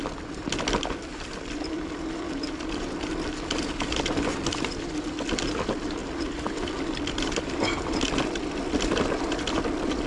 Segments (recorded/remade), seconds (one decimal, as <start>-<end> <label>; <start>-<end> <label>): 0.0-1.1 recorded; 1.1-3.1 remade; 3.1-6.0 recorded; 6.0-8.4 remade; 8.4-10.1 recorded